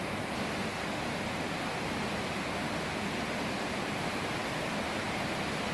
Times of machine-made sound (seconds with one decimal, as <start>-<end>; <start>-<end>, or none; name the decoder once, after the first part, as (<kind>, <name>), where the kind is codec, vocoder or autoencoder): none